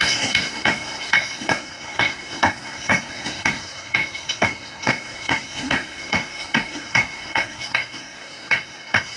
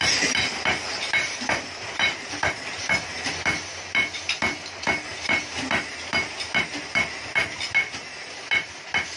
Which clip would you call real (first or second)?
second